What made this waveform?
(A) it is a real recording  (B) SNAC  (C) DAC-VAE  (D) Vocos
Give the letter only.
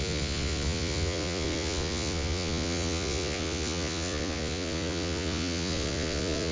D